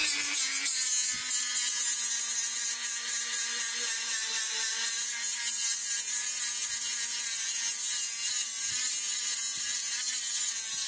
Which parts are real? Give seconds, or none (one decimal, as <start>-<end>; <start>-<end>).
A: 0.0-2.6; 4.7-10.9